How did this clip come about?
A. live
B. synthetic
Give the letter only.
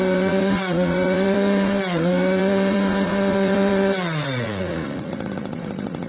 B